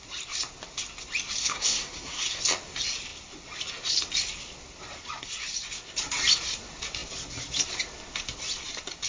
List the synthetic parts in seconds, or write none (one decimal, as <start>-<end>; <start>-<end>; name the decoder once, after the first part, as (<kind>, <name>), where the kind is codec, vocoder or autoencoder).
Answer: 1.4-2.4 (codec, SNAC)